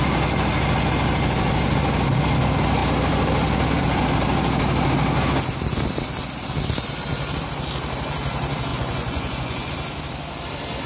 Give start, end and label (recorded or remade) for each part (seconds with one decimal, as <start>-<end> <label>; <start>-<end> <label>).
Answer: 0.0-8.7 recorded; 8.7-9.7 remade; 9.7-10.9 recorded